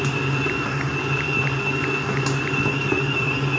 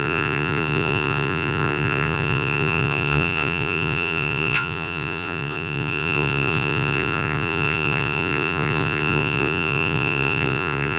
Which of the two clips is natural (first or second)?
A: first